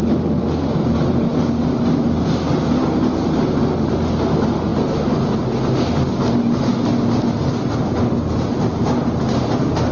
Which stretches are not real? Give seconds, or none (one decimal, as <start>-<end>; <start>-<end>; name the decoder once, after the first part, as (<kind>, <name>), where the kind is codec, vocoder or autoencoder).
none